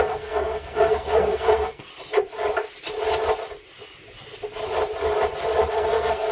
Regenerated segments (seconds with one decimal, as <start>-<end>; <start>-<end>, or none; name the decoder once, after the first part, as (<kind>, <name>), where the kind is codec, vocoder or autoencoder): 0.0-1.9 (codec, SNAC); 5.7-6.3